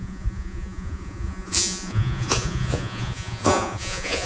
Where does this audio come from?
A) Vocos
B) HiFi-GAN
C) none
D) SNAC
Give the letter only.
A